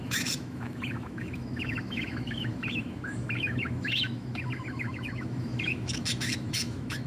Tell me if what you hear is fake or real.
fake